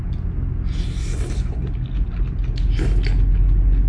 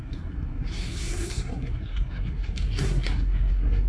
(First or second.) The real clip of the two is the first